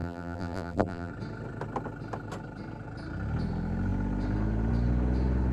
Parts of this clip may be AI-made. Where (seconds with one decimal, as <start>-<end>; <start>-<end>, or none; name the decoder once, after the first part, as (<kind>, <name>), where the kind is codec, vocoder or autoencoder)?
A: 0.0-1.1 (vocoder, BigVGAN v2)